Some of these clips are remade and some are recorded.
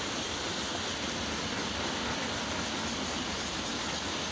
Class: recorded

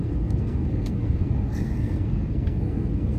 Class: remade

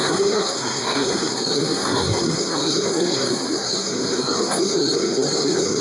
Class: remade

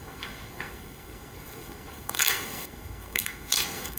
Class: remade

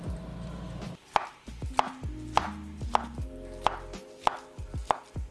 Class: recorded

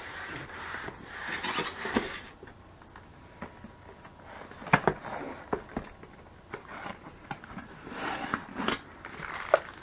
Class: recorded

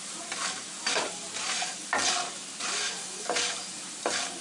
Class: recorded